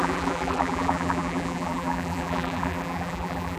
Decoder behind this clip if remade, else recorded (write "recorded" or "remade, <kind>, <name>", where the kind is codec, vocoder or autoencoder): remade, vocoder, BigVGAN v2